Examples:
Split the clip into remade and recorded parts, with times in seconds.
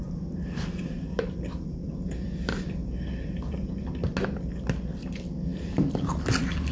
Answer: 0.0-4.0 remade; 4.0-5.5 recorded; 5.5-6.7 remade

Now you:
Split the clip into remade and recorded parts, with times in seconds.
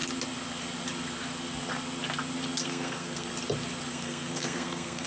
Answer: 0.0-2.6 recorded; 2.6-3.3 remade; 3.3-3.9 recorded; 3.9-5.1 remade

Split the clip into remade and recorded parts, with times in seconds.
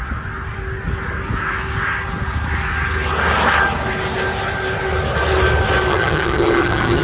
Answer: 0.0-5.9 recorded; 5.9-7.0 remade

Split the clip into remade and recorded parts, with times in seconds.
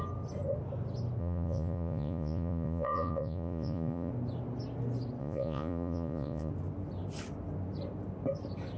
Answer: 0.0-1.2 recorded; 1.2-4.1 remade; 4.1-5.2 recorded; 5.2-6.5 remade; 6.5-8.8 recorded